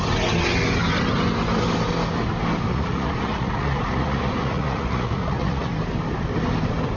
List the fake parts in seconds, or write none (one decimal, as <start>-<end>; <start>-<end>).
2.7-5.7